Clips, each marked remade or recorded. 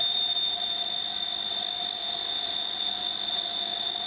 recorded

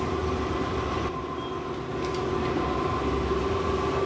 recorded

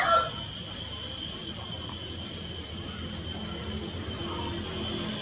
recorded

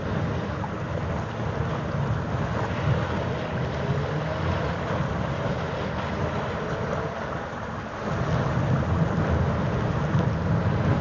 recorded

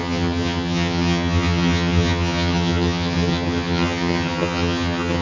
remade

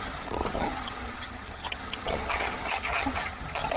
remade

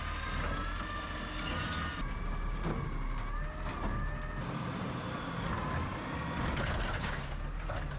recorded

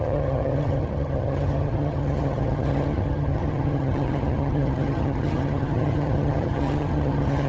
remade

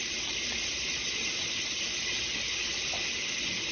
recorded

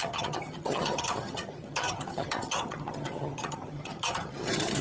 remade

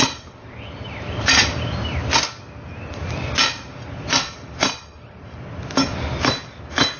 recorded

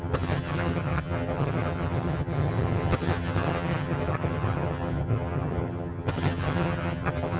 remade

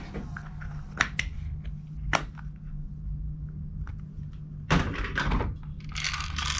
recorded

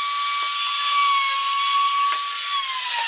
recorded